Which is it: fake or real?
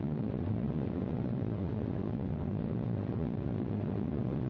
fake